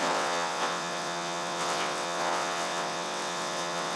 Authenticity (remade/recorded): remade